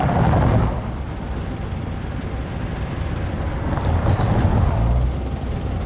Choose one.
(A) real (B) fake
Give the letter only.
A